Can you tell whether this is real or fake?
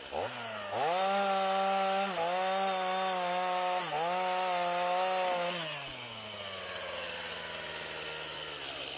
real